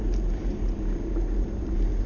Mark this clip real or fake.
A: real